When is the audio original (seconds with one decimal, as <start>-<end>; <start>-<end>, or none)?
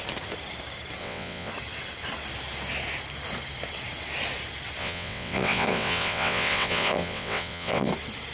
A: 0.0-1.0; 1.5-4.8; 7.9-8.3